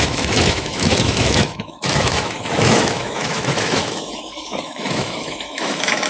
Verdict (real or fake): fake